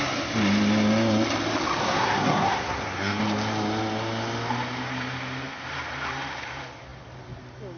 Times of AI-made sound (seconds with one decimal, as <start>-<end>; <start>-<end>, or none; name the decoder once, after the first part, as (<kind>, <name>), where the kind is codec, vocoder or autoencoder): 1.8-3.2 (codec, SNAC)